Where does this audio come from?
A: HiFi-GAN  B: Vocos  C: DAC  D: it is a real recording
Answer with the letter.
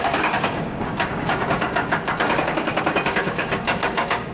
C